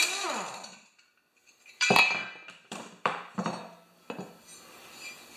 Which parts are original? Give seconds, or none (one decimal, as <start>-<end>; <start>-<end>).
0.0-1.4; 3.8-5.4